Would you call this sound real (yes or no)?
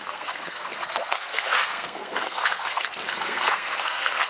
no